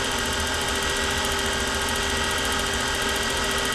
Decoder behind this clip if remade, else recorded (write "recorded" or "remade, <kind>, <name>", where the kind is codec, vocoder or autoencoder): recorded